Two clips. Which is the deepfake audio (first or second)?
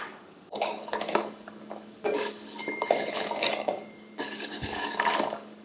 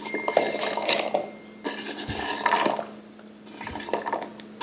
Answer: first